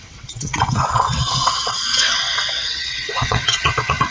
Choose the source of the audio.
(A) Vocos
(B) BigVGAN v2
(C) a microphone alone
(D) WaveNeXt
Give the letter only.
D